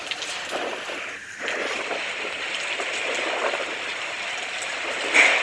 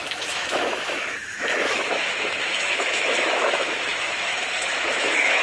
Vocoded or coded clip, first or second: second